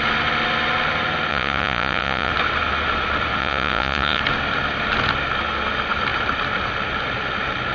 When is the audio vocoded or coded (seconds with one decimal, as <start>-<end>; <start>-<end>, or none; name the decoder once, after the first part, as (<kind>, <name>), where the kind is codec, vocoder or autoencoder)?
1.3-2.3 (vocoder, Vocos); 3.4-4.2

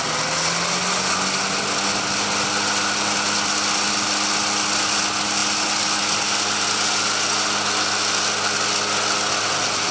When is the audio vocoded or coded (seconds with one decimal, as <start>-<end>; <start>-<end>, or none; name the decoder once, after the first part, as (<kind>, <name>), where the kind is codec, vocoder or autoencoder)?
none

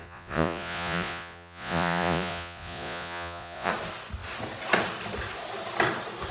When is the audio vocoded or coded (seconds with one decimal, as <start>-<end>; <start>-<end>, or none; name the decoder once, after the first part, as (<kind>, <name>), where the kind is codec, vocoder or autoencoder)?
0.0-3.7 (vocoder, Vocos)